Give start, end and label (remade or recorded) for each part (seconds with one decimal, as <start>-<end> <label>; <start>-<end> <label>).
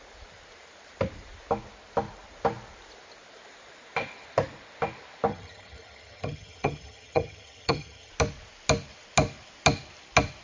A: 0.0-5.3 recorded; 5.3-8.1 remade; 8.1-10.4 recorded